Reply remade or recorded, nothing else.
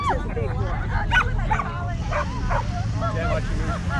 recorded